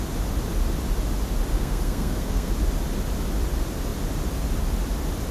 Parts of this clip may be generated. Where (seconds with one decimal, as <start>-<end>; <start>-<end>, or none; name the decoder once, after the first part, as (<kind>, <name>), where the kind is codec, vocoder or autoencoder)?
1.5-2.5 (codec, SNAC)